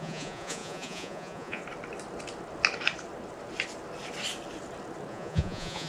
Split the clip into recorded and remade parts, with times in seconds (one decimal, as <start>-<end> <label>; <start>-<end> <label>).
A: 0.0-1.6 remade; 1.6-5.1 recorded; 5.1-5.9 remade